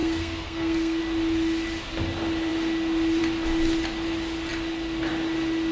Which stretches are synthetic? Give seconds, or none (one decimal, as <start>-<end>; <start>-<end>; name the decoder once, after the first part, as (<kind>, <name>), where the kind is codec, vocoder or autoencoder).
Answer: 0.0-1.0 (codec, SNAC)